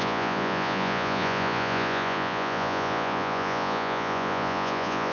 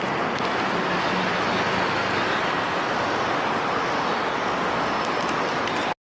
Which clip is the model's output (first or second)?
first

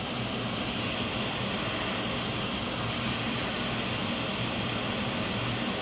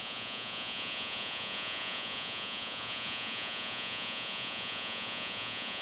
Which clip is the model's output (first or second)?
second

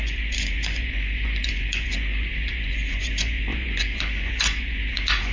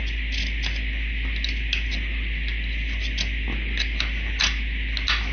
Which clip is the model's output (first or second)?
first